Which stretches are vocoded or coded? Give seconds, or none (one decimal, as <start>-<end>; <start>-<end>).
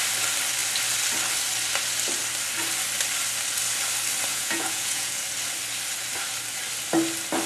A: 4.3-5.1